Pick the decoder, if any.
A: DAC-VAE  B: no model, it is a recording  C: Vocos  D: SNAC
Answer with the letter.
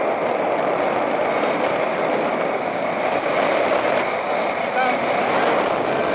B